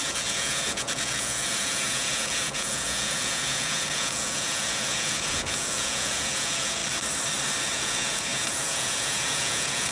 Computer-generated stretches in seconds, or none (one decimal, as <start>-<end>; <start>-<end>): 0.0-6.8; 7.6-9.9